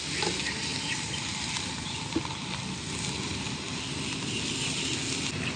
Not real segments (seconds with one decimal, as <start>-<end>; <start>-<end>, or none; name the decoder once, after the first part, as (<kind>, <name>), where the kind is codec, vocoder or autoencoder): none